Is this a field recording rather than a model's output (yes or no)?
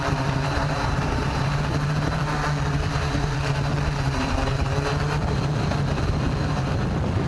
no